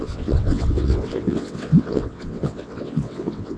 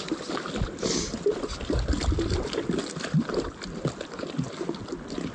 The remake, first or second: first